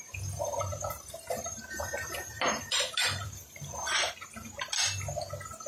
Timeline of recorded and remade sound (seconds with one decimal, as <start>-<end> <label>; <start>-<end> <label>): 0.0-0.7 recorded; 0.7-4.1 remade; 4.1-5.7 recorded